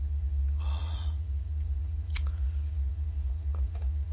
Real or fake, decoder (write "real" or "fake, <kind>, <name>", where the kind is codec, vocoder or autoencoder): fake, vocoder, Vocos